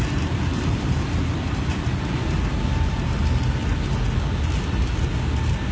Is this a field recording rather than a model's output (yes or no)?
yes